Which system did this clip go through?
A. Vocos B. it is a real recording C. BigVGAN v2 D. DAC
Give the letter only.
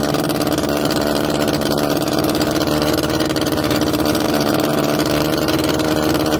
C